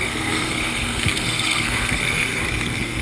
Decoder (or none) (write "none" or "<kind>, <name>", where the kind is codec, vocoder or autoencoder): codec, SNAC